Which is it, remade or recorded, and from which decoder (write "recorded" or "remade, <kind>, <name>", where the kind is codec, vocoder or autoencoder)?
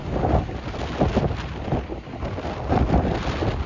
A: recorded